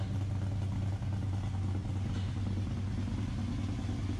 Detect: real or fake real